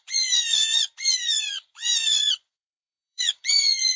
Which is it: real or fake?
fake